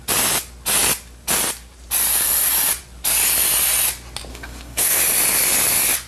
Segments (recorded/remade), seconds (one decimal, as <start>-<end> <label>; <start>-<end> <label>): 0.0-4.3 recorded; 4.3-5.0 remade; 5.0-6.1 recorded